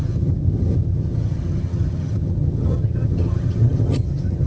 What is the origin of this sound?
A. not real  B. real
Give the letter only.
A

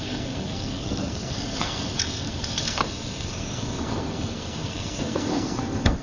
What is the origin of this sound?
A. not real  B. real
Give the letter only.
A